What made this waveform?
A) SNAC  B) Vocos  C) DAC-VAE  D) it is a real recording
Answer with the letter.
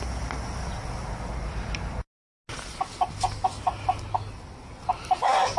D